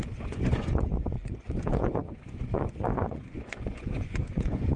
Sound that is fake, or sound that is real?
fake